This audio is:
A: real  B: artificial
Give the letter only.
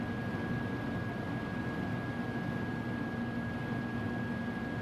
A